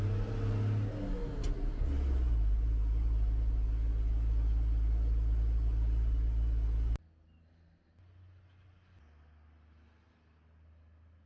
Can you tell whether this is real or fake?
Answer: real